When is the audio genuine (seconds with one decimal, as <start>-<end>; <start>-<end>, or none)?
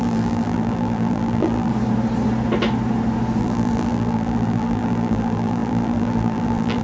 1.7-3.4